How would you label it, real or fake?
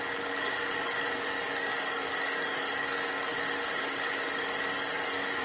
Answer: fake